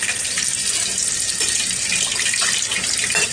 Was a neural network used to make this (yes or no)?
no